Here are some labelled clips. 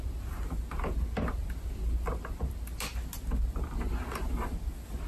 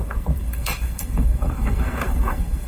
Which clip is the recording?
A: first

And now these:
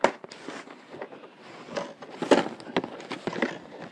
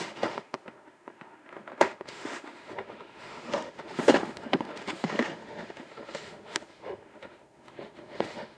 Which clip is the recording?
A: first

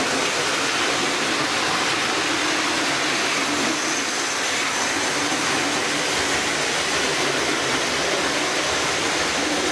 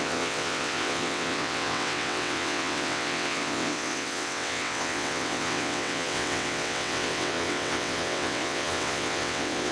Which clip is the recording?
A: first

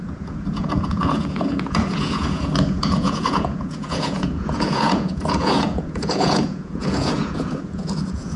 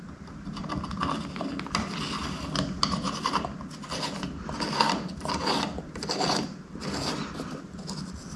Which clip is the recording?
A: second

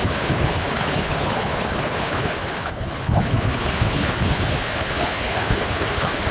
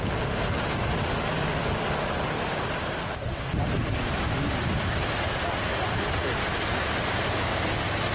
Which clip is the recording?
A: second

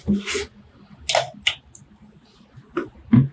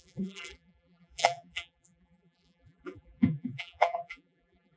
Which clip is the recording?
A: first